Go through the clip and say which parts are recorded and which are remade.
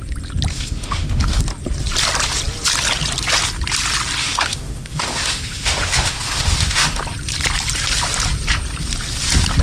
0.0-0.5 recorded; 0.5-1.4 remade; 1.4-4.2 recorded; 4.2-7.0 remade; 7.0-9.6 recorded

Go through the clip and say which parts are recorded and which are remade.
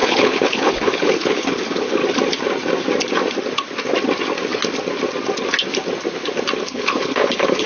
0.0-2.0 remade; 2.0-6.6 recorded; 6.6-7.7 remade